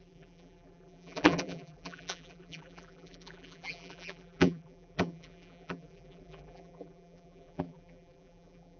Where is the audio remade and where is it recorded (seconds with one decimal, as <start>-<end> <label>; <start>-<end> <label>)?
0.0-8.8 remade

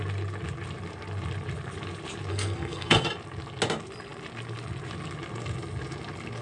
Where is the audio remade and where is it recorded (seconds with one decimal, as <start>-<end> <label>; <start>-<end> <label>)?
0.0-2.3 recorded; 2.3-3.1 remade; 3.1-6.4 recorded

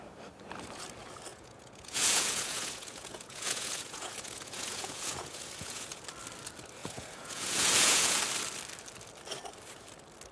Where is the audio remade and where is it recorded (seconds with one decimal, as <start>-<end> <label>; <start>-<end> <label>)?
0.0-1.3 recorded; 1.3-6.0 remade; 6.0-6.8 recorded; 6.8-8.2 remade; 8.2-10.3 recorded

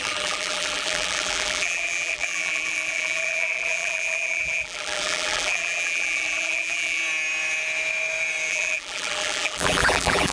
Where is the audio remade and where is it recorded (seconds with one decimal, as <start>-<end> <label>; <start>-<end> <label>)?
0.0-7.0 remade; 7.0-8.5 recorded; 8.5-10.3 remade

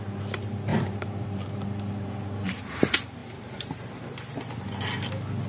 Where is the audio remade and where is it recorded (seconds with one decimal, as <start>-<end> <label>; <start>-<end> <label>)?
0.0-0.7 recorded; 0.7-2.6 remade; 2.6-5.5 recorded